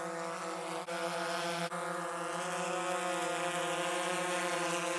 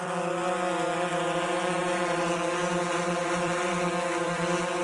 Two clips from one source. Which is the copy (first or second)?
second